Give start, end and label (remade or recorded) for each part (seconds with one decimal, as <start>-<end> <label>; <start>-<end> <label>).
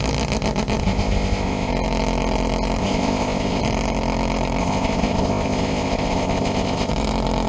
0.0-0.8 recorded; 0.8-1.7 remade; 1.7-2.8 recorded; 2.8-3.6 remade; 3.6-4.6 recorded; 4.6-6.9 remade; 6.9-7.5 recorded